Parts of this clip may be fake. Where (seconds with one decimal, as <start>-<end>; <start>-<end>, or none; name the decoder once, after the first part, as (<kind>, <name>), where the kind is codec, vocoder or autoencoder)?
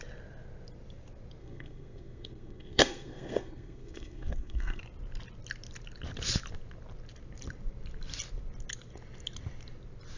1.4-4.8 (codec, SNAC)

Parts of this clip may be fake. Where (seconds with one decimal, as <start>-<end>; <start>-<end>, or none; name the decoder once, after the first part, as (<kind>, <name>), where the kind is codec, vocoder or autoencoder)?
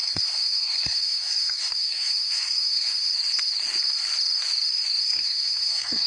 0.0-3.1 (codec, SNAC); 5.0-6.1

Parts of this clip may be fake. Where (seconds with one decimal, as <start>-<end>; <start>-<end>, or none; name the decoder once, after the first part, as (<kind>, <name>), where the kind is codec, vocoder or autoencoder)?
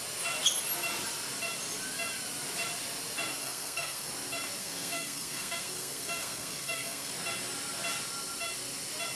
3.4-4.1 (codec, SNAC); 4.6-7.1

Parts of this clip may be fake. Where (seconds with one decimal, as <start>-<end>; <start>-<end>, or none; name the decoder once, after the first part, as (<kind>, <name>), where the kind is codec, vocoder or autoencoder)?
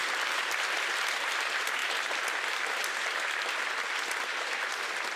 none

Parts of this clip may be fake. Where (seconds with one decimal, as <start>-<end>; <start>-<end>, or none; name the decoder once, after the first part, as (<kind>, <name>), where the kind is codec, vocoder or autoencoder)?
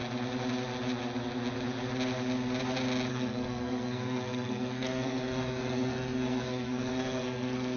3.1-7.8 (codec, SNAC)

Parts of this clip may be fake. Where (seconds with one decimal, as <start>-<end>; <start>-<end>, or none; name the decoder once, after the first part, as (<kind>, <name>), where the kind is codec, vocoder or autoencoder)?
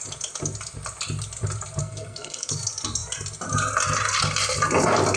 1.8-2.5 (codec, SNAC)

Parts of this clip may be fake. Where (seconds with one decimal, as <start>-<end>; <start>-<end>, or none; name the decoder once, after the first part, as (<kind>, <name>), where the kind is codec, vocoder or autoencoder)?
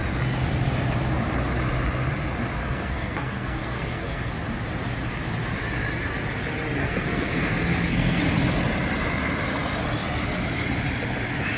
2.6-4.3 (codec, SNAC); 6.8-8.2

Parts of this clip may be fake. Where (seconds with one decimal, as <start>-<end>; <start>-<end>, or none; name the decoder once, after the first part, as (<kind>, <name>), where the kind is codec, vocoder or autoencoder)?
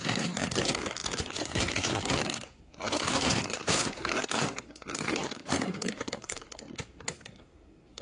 0.0-8.0 (codec, SNAC)